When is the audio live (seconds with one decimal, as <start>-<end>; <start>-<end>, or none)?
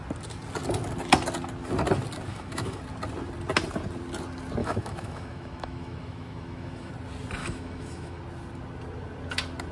0.0-2.3; 2.8-4.6; 6.9-7.4; 8.2-9.7